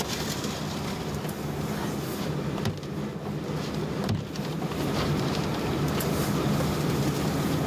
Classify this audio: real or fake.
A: real